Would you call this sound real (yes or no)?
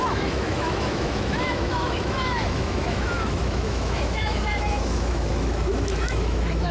no